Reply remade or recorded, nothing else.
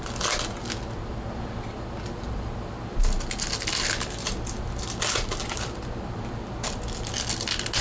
recorded